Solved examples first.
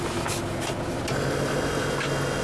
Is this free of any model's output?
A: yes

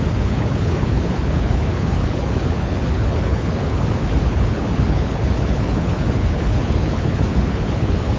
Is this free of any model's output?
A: no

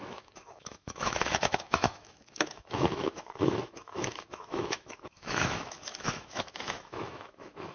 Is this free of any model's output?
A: no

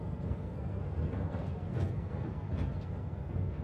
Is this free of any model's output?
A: no